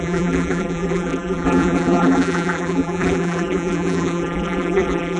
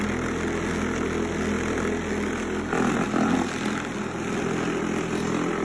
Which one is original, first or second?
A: second